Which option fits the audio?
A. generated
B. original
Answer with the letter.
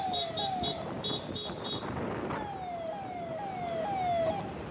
B